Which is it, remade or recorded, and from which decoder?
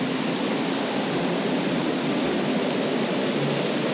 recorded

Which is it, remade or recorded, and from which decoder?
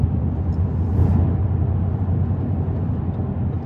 recorded